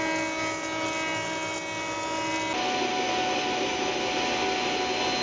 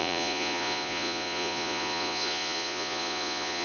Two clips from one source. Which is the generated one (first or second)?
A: second